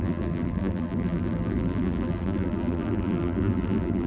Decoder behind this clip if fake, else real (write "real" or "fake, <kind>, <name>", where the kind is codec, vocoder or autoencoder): fake, vocoder, BigVGAN v2